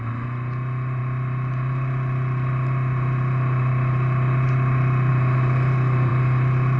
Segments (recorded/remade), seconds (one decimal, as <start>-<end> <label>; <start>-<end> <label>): 0.0-6.8 recorded